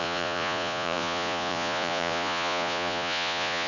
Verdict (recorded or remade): remade